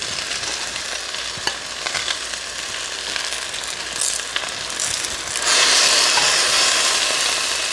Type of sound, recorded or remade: recorded